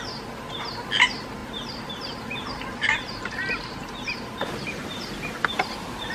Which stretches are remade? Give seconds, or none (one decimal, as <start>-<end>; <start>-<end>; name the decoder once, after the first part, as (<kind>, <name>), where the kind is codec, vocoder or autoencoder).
1.4-5.1 (vocoder, BigVGAN v2)